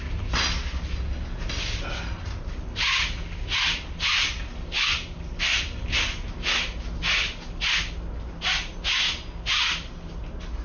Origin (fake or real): real